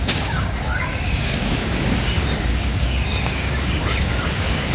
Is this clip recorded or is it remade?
remade